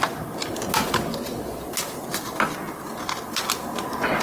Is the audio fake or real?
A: real